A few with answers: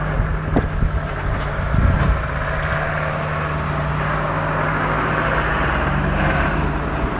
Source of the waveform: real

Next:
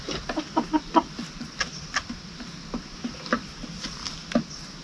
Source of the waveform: real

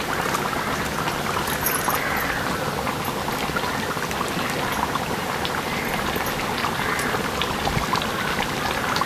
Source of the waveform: real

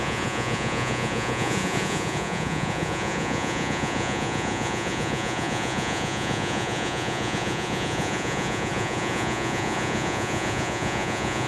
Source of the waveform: fake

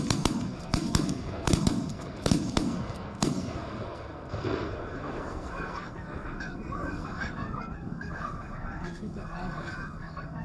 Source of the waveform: fake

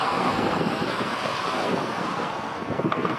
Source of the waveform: fake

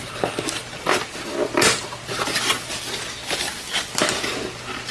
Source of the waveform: real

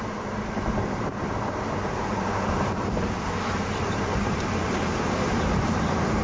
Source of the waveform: fake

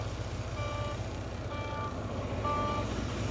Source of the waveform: real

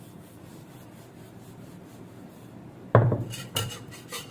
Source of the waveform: fake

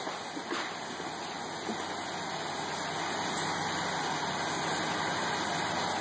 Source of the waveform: real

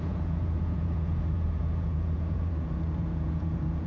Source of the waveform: fake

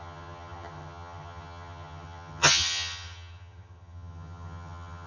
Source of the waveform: fake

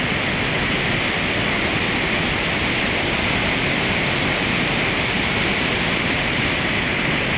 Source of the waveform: real